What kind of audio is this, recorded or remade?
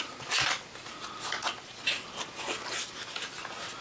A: recorded